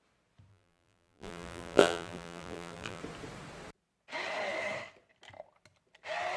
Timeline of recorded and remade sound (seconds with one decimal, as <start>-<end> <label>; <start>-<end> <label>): 0.0-0.5 recorded; 0.5-3.0 remade; 3.0-6.4 recorded